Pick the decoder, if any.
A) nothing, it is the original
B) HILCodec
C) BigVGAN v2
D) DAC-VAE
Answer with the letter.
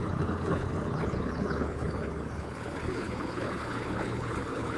B